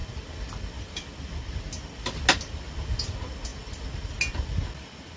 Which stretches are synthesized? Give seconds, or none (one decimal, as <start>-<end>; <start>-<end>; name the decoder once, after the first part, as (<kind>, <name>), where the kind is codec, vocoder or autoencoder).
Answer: none